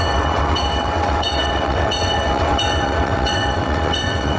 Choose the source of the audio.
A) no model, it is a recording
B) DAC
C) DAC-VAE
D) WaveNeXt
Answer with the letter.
D